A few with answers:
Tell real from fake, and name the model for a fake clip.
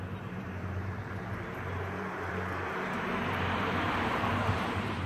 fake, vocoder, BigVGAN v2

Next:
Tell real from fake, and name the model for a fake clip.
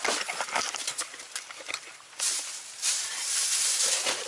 real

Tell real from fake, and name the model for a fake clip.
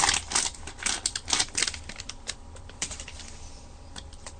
real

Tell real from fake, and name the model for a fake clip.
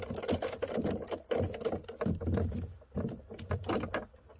real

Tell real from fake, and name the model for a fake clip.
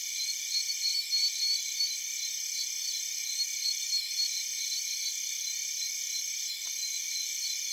fake, vocoder, BigVGAN v2